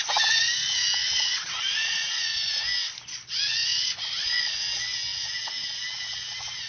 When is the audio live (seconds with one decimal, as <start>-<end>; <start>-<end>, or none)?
0.0-1.0; 2.6-3.6; 4.6-6.7